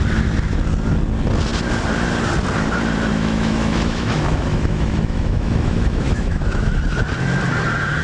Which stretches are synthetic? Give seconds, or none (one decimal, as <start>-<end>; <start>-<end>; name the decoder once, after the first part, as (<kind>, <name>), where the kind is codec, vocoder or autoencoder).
3.1-6.8 (autoencoder, DAC-VAE)